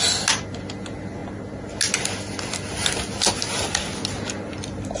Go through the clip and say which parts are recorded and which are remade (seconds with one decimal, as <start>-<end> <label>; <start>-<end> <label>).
0.0-5.0 recorded